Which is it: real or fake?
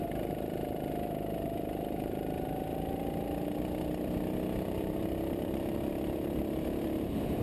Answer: fake